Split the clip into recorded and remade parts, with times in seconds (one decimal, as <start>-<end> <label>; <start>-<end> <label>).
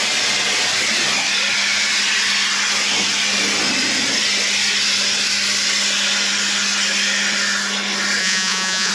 0.0-8.2 recorded; 8.2-8.9 remade